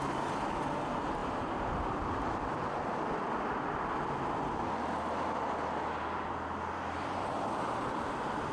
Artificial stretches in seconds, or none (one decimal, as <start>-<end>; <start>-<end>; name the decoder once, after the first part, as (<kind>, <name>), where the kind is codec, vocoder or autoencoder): none